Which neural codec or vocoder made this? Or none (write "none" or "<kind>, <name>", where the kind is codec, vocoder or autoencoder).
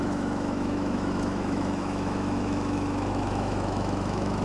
autoencoder, DAC-VAE